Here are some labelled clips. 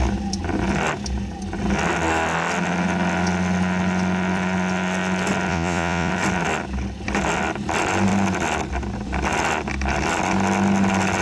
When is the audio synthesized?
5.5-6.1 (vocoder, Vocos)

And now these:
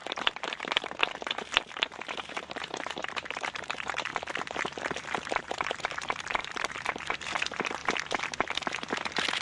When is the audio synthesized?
0.0-4.1 (vocoder, BigVGAN v2); 5.2-7.8

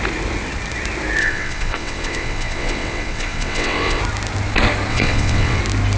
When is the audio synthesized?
1.2-4.0 (vocoder, WaveNeXt); 4.9-5.6

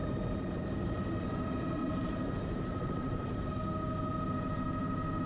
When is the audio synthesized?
0.0-1.0 (vocoder, BigVGAN v2); 1.8-3.5

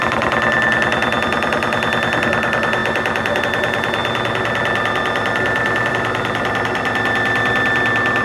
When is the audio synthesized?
none

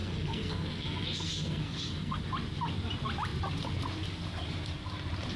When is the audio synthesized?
0.0-2.2 (codec, SNAC)